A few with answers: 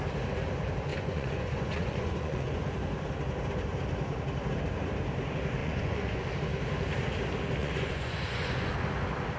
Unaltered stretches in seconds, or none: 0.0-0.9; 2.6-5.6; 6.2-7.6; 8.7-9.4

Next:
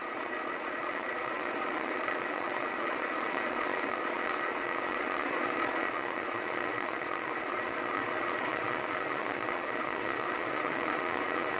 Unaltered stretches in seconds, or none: none